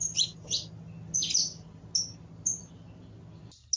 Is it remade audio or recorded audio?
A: recorded